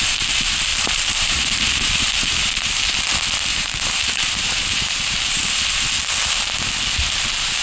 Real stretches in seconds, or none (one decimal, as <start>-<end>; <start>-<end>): 0.0-0.7; 2.9-3.5; 5.6-7.6